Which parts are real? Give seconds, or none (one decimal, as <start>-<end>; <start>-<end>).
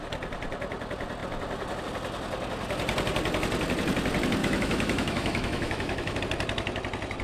0.0-4.4; 6.2-7.2